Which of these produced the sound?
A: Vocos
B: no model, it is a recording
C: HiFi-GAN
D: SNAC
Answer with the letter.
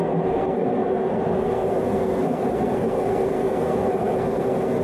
D